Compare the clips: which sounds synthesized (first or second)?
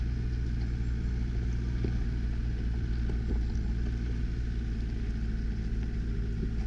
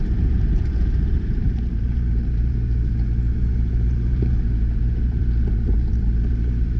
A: second